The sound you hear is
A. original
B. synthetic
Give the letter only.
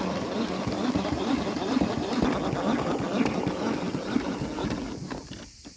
A